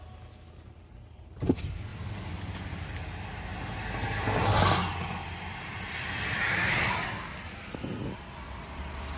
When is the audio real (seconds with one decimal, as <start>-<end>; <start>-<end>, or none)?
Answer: 0.0-9.2